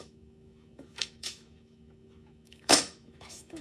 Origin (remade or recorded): remade